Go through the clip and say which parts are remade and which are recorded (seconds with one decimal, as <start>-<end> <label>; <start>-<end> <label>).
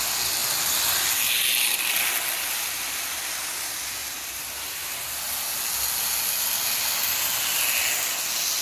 0.0-8.6 recorded